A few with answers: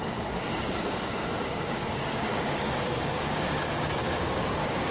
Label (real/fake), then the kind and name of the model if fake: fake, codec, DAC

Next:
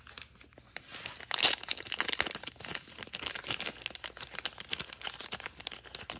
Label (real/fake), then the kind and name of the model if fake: real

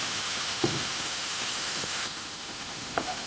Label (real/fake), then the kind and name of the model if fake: fake, autoencoder, DAC-VAE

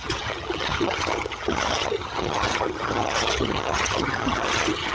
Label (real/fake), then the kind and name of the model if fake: fake, vocoder, HiFi-GAN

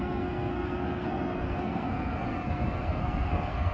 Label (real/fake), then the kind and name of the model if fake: fake, codec, SNAC